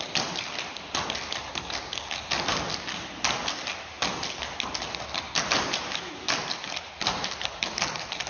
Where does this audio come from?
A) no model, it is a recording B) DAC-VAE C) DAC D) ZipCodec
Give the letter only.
A